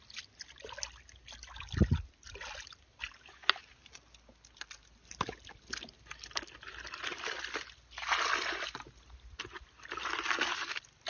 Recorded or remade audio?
recorded